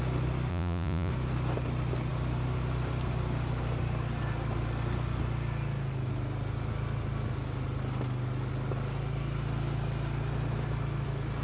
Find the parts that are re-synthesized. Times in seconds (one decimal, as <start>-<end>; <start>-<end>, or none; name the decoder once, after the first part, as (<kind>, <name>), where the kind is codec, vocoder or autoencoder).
0.5-1.1 (vocoder, Vocos)